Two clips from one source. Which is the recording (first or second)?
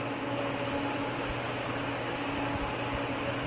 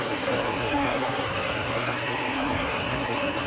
first